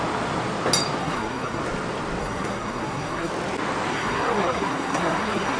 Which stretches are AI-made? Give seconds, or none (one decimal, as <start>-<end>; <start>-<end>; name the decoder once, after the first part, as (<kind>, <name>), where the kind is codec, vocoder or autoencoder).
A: 1.0-1.6 (codec, SNAC); 2.2-3.3; 3.9-5.6